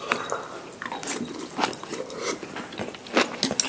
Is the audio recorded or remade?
recorded